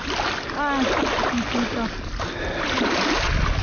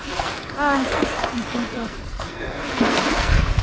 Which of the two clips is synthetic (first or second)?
second